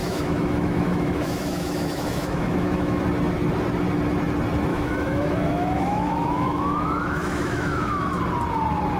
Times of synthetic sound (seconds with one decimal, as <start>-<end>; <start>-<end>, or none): 0.0-3.0; 4.7-8.2